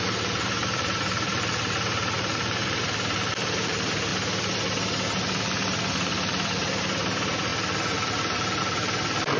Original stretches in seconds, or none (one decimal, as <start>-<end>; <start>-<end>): 4.1-5.2; 7.5-8.6

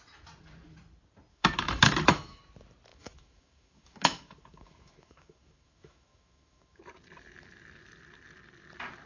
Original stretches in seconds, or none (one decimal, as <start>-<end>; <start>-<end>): 0.0-1.3; 2.4-2.9; 6.8-9.1

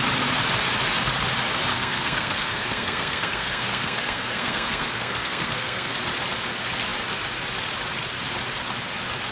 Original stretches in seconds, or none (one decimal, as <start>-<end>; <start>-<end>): 0.0-1.7; 6.0-9.3

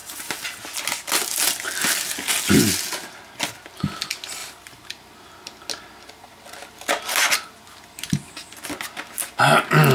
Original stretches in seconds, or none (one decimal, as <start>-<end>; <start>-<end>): 0.0-9.9

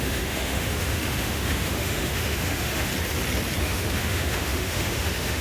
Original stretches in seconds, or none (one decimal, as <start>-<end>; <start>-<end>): 2.9-3.6

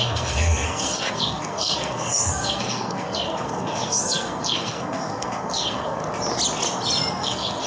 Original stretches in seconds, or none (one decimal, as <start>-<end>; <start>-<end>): 6.0-7.1

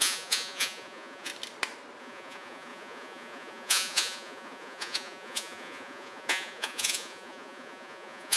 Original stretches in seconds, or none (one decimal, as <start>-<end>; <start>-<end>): 1.3-2.0